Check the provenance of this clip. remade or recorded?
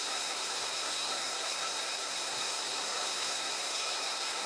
remade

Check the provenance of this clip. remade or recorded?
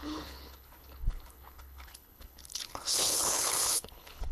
remade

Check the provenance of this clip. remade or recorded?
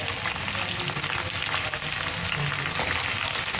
recorded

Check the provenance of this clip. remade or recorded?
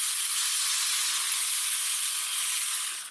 recorded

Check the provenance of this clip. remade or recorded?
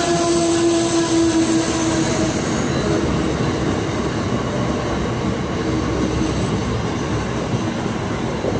recorded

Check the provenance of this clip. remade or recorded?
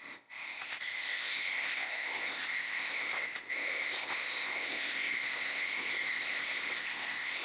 remade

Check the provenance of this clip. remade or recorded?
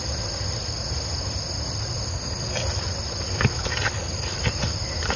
recorded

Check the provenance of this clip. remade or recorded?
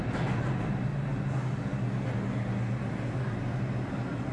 recorded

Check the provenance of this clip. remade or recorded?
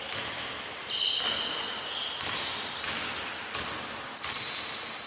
recorded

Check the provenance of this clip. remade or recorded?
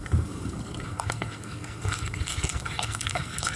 remade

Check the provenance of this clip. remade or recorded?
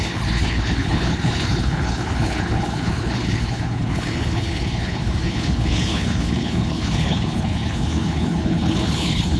remade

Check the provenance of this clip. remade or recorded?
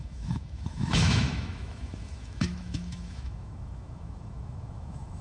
remade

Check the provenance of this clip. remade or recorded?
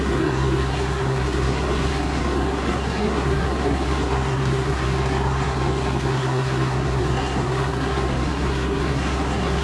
remade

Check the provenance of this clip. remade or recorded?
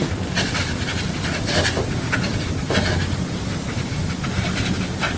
recorded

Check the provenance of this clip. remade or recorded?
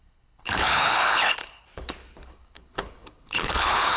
remade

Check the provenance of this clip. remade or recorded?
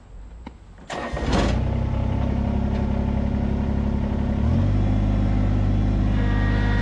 recorded